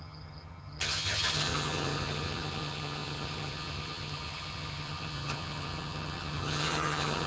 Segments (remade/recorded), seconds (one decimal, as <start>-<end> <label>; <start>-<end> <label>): 0.0-7.3 remade